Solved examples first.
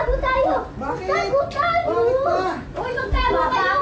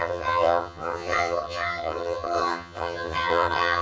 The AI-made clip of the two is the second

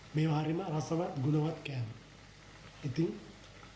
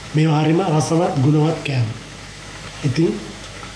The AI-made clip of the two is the second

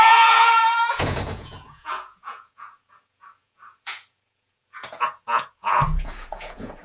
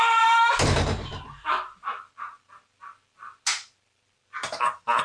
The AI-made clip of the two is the first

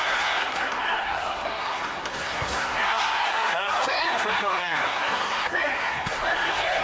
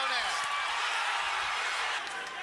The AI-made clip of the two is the first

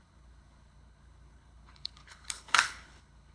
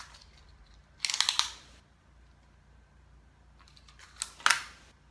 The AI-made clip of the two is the first